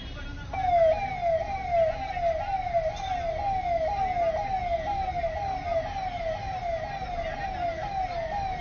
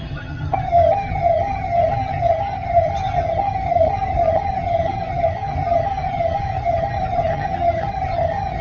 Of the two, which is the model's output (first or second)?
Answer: second